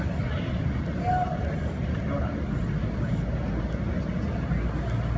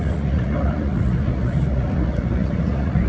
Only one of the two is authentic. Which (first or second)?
first